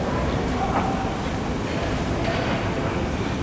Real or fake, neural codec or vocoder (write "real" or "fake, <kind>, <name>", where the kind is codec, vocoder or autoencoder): real